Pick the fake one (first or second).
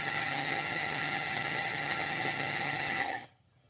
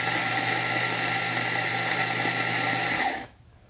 first